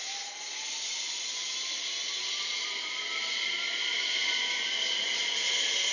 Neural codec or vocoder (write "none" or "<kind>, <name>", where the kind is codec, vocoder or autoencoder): none